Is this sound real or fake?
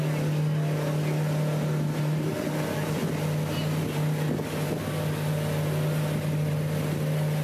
real